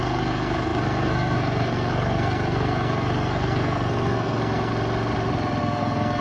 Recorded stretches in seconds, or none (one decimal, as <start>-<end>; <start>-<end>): 4.7-5.6